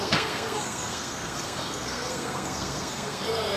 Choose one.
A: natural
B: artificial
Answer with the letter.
B